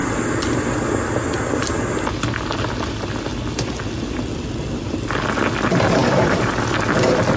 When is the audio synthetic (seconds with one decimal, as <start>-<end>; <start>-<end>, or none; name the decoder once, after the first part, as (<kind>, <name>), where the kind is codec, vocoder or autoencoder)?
6.0-6.5 (vocoder, BigVGAN v2)

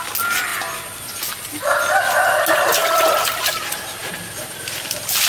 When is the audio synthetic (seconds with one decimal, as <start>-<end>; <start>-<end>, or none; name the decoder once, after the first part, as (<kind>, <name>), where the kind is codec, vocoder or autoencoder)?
none

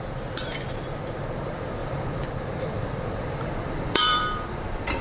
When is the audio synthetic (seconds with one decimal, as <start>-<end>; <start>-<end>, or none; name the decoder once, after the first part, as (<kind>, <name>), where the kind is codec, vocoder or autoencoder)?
1.8-5.0 (vocoder, BigVGAN v2)

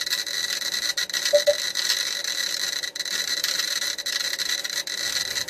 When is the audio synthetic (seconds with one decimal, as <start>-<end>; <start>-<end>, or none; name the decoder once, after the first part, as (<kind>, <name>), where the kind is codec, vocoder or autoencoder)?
2.2-5.1 (vocoder, BigVGAN v2)

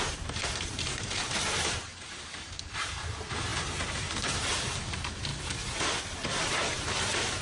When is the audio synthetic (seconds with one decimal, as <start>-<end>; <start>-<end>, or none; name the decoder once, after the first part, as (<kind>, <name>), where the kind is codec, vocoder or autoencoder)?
0.0-5.3 (vocoder, BigVGAN v2); 6.0-7.4